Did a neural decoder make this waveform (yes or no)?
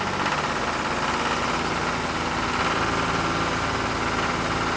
no